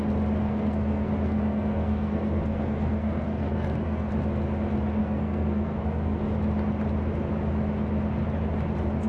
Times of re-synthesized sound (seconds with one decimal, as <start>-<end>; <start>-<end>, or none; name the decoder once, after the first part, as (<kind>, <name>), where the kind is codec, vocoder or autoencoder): 0.4-4.1 (codec, SNAC); 5.0-6.4